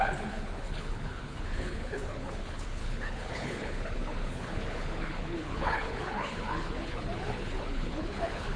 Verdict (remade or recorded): remade